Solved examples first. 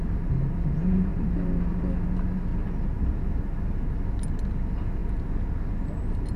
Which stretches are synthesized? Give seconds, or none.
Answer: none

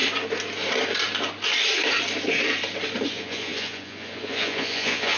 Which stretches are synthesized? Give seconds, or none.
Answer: 3.1-5.2 (vocoder, Vocos)

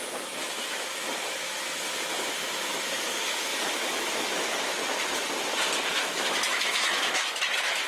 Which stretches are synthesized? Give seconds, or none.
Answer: 0.0-4.8 (autoencoder, DAC-VAE); 5.9-7.9

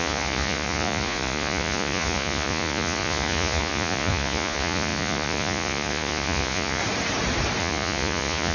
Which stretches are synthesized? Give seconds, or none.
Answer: 0.0-6.8 (vocoder, Vocos); 7.6-8.5

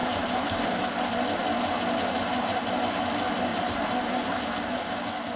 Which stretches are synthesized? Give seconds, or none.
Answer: 0.0-0.8 (vocoder, BigVGAN v2); 1.4-2.6; 3.5-4.5

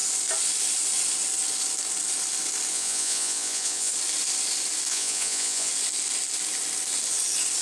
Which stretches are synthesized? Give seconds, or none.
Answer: 2.7-3.9 (vocoder, Vocos); 4.9-5.7